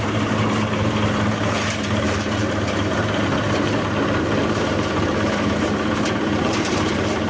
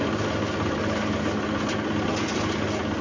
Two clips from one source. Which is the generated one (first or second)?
first